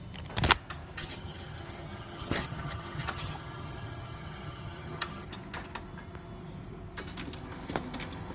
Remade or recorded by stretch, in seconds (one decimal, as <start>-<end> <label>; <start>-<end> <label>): 0.0-1.0 recorded; 1.0-5.3 remade; 5.3-8.3 recorded